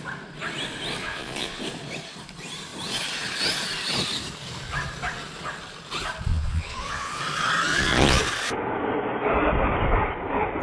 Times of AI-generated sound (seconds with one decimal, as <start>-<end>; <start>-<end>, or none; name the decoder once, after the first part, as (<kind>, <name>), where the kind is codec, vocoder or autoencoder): 1.0-1.6 (vocoder, Vocos); 6.3-7.2; 7.7-8.2